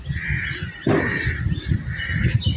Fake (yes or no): no